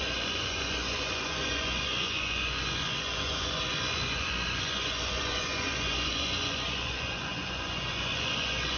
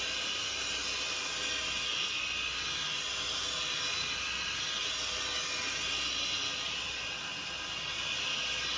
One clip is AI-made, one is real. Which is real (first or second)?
second